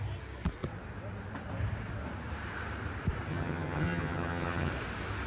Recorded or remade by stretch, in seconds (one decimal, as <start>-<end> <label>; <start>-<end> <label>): 0.0-3.3 recorded; 3.3-4.7 remade; 4.7-5.3 recorded

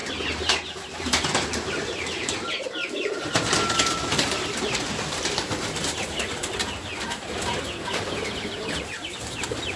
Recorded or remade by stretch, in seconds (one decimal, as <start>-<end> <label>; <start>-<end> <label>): 0.0-1.0 recorded; 1.0-6.4 remade; 6.4-7.9 recorded; 7.9-9.8 remade

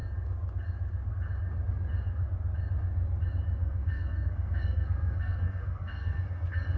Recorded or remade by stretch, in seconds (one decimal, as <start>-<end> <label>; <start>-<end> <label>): 0.0-3.6 recorded; 3.6-6.2 remade; 6.2-6.8 recorded

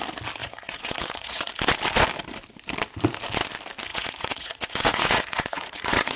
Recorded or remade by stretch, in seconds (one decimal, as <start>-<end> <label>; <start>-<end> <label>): 0.0-0.4 recorded; 0.4-1.5 remade; 1.5-3.9 recorded; 3.9-6.2 remade

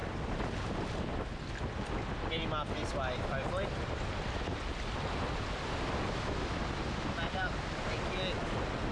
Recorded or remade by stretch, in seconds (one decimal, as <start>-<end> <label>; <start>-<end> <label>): 0.0-8.9 recorded